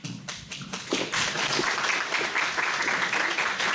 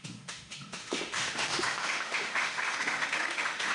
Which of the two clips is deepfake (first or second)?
second